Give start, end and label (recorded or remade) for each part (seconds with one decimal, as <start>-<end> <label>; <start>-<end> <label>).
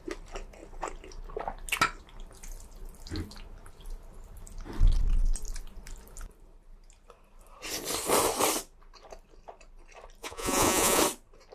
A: 0.0-10.2 recorded; 10.2-11.0 remade; 11.0-11.5 recorded